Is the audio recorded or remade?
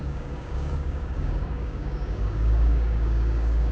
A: remade